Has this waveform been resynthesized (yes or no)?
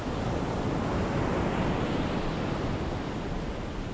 no